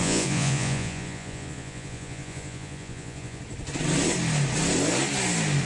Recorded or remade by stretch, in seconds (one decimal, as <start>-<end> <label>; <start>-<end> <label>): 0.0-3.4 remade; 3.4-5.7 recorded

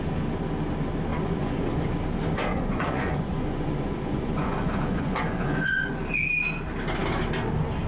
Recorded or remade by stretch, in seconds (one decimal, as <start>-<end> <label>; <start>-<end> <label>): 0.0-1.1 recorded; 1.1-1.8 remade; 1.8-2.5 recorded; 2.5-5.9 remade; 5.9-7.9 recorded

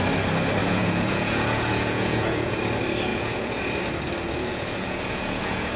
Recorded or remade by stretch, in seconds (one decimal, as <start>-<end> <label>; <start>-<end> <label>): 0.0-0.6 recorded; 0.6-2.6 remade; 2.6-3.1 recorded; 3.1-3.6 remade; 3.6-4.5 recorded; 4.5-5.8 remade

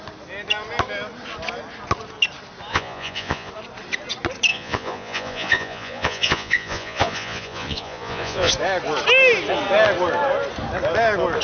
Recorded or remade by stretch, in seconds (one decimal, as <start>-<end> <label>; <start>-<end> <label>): 0.0-2.7 recorded; 2.7-3.5 remade; 3.5-4.5 recorded; 4.5-8.5 remade; 8.5-11.4 recorded